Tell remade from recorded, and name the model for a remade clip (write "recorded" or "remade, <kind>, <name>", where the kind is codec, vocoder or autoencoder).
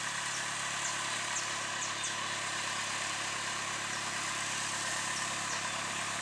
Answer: recorded